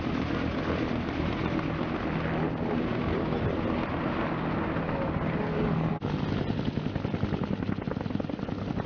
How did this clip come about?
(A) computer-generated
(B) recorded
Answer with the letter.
B